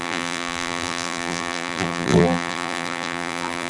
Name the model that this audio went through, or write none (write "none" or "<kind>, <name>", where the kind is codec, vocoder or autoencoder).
vocoder, BigVGAN v2